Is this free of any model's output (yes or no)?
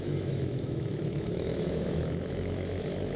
no